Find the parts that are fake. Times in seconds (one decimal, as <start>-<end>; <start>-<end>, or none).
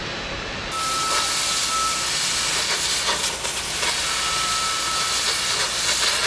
none